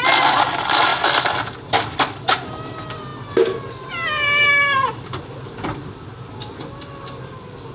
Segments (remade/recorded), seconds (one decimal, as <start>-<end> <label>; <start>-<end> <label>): 0.0-3.1 remade; 3.1-3.9 recorded; 3.9-7.7 remade